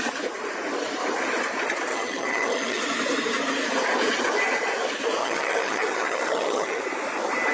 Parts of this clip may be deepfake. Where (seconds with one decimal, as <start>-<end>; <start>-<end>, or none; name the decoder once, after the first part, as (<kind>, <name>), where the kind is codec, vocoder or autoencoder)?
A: 1.9-2.8 (vocoder, HiFi-GAN); 5.2-6.8